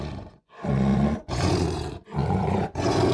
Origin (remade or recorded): remade